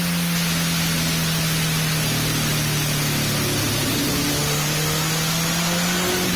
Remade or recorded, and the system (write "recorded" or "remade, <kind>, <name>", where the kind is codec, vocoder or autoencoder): recorded